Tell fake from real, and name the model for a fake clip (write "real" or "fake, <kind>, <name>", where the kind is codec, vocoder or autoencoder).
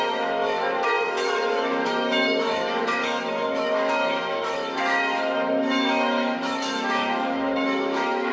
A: fake, autoencoder, DAC-VAE